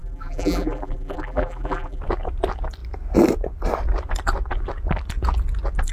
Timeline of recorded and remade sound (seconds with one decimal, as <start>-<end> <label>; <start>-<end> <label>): 0.0-2.0 remade; 2.0-5.9 recorded